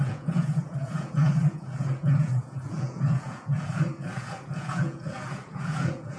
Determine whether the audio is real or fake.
fake